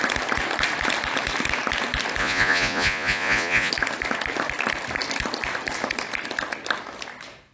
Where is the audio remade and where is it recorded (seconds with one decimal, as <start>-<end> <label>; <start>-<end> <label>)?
0.0-2.2 recorded; 2.2-3.7 remade; 3.7-7.5 recorded